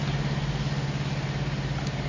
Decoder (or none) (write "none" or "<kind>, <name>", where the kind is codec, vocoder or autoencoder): none